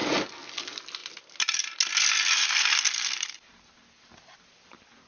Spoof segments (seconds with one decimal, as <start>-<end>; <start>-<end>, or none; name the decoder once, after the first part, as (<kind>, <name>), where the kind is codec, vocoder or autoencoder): 0.6-1.0 (vocoder, BigVGAN v2); 3.9-5.1